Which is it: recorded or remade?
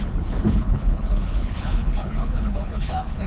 remade